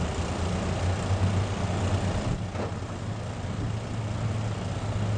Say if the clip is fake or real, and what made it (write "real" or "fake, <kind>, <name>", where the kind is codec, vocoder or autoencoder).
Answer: real